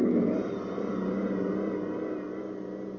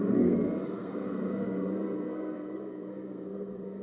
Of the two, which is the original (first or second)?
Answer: first